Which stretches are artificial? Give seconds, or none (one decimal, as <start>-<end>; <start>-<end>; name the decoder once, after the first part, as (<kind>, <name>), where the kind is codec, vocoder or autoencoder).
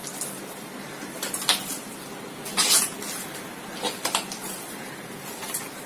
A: none